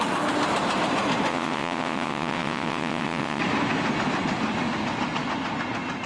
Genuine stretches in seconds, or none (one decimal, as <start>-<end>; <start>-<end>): 0.0-1.3; 3.4-6.1

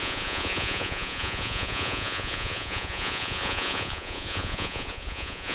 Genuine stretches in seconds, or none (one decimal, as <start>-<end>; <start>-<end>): none

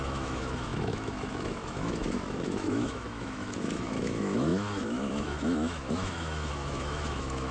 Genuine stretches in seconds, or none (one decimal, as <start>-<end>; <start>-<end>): none

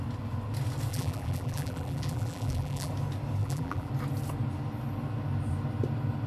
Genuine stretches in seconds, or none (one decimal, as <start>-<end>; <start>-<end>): 0.0-0.9; 2.9-3.4; 3.9-6.3

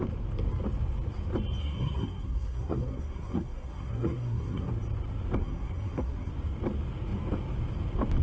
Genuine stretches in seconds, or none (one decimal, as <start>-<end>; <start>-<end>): 0.0-1.6; 4.7-5.4; 6.3-8.2

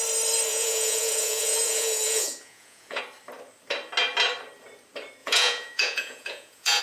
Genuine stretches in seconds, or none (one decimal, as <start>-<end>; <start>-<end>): 0.0-0.5; 3.0-5.2

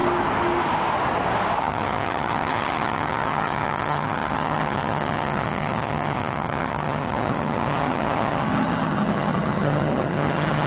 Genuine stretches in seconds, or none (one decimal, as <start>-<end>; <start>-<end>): 0.0-1.6

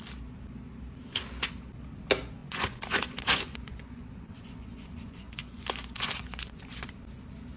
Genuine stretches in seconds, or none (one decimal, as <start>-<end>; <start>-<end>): 0.0-2.4; 6.9-7.6